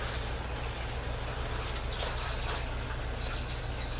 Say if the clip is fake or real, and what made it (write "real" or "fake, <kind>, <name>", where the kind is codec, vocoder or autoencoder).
real